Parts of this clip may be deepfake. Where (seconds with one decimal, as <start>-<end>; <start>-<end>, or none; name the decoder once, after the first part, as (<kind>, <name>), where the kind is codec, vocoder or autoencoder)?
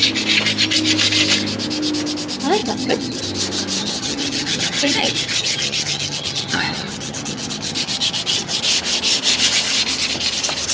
2.6-3.2 (vocoder, HiFi-GAN); 3.8-8.6